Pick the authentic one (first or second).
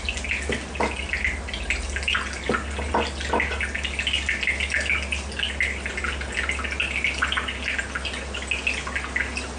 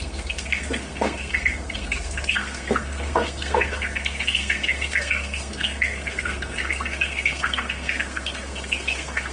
first